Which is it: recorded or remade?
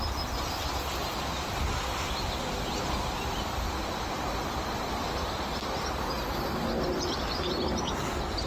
recorded